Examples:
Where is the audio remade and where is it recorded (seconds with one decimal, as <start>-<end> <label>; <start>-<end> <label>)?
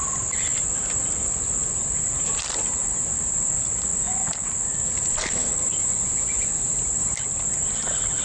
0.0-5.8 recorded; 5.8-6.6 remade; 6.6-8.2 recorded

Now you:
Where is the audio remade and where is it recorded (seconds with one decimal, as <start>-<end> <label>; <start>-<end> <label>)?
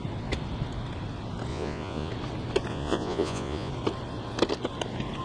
0.0-1.5 recorded; 1.5-2.1 remade; 2.1-2.7 recorded; 2.7-3.7 remade; 3.7-5.2 recorded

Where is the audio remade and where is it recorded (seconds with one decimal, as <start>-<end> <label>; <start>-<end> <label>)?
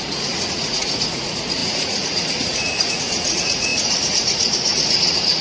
0.0-5.4 remade